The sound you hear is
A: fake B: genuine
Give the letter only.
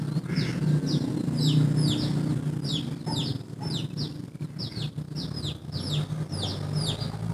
B